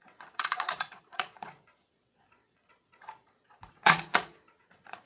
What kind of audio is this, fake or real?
fake